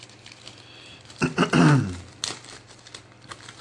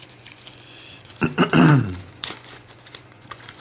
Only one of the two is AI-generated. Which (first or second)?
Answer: second